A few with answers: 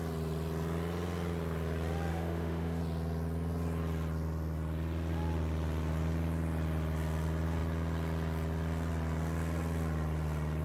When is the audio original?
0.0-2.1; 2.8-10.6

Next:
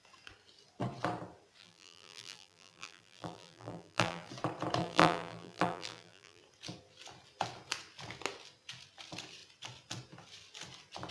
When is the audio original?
0.0-1.6; 4.3-4.8; 6.4-11.1

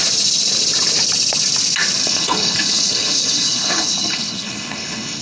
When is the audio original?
0.0-2.0

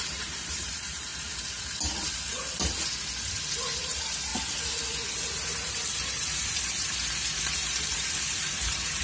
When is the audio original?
1.1-3.8; 4.3-5.7